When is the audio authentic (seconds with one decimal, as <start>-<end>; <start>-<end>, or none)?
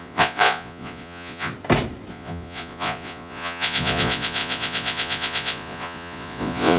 1.5-2.1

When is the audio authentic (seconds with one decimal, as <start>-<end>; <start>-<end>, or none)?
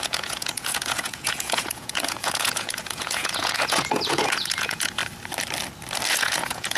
5.0-6.1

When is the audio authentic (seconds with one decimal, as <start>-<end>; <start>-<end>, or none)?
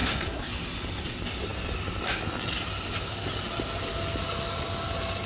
0.5-5.3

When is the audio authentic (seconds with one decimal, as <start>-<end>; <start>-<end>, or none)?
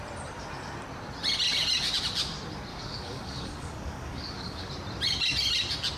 0.0-2.7; 4.7-6.0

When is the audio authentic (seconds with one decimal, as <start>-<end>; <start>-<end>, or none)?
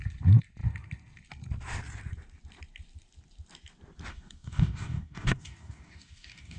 0.0-4.1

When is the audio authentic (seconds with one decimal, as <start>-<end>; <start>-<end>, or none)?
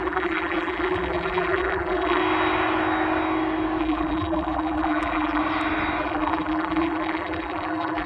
2.2-3.8; 5.4-6.0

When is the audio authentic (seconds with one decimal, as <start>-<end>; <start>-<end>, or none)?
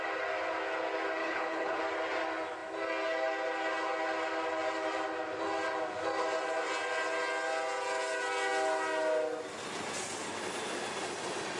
0.0-1.2; 1.8-11.6